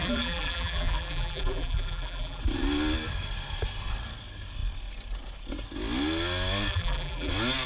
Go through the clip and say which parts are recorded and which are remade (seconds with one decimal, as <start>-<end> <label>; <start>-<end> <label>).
0.0-2.4 remade; 2.4-6.7 recorded; 6.7-7.3 remade; 7.3-7.7 recorded